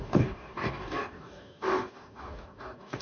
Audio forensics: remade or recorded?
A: remade